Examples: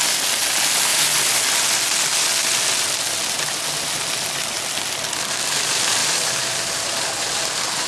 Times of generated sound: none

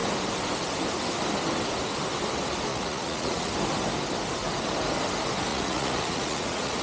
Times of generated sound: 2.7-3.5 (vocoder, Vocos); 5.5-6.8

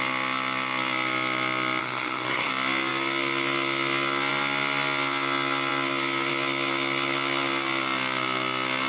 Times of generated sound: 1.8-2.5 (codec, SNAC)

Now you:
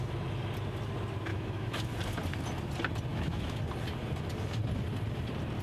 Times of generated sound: 1.3-1.9 (autoencoder, DAC-VAE); 3.1-3.6

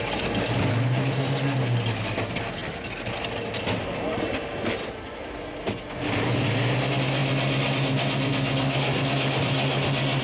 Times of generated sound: none

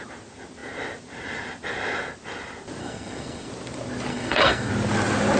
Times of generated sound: 2.8-3.5 (codec, SNAC); 4.1-4.7

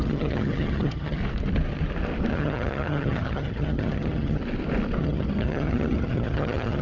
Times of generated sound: 0.0-1.2 (vocoder, HiFi-GAN); 2.3-4.4; 5.0-6.8

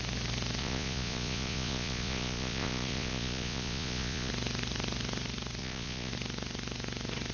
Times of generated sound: 0.6-4.3 (vocoder, Vocos); 5.6-6.1